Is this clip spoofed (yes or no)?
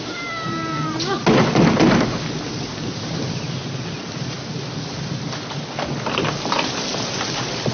no